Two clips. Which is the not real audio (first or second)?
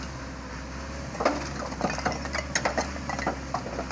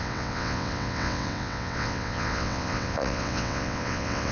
second